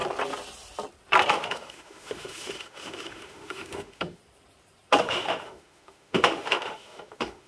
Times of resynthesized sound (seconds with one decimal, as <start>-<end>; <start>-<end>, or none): 1.3-4.2; 5.0-7.5